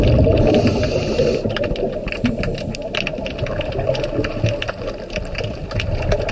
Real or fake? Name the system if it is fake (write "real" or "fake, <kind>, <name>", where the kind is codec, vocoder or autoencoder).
real